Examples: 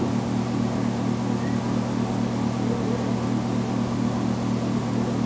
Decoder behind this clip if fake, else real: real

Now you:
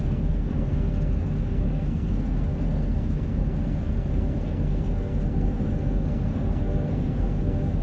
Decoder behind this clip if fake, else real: fake, codec, SNAC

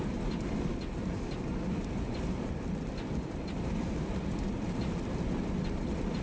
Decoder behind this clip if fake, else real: fake, vocoder, BigVGAN v2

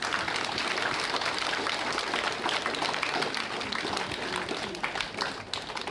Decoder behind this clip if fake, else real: real